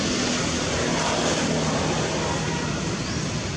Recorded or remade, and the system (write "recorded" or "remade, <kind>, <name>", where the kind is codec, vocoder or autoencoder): recorded